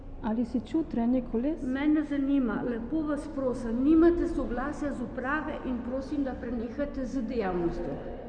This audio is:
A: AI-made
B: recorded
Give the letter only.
B